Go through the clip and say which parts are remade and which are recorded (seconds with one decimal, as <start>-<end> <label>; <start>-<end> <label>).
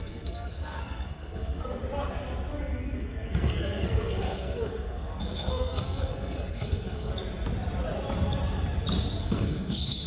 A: 0.0-1.8 remade; 1.8-2.6 recorded; 2.6-7.1 remade; 7.1-9.2 recorded; 9.2-10.1 remade